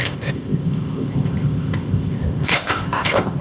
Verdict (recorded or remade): remade